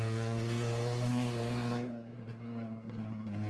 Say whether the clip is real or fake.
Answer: fake